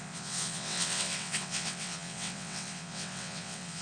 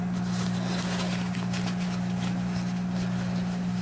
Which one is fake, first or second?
first